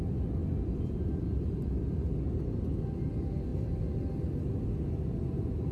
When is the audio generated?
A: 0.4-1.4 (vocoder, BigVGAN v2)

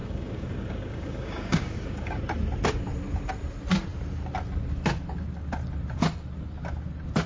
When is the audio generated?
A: 0.0-2.2 (codec, DAC)

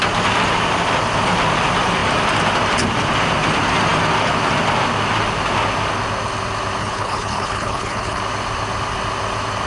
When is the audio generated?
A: 6.8-8.2 (codec, HILCodec)

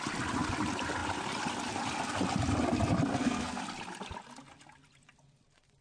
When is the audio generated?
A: 3.1-3.6 (codec, SNAC)